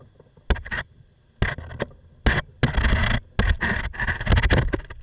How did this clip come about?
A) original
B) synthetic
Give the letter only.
A